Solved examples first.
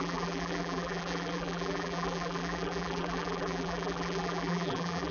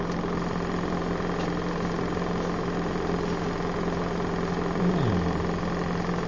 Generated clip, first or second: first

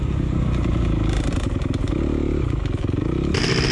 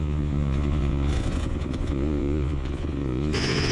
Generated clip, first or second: second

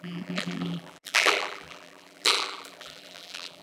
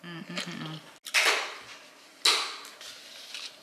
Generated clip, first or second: first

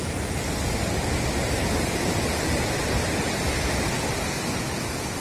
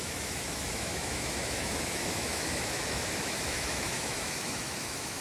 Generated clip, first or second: second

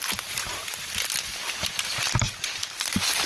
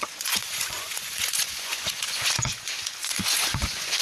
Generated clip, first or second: second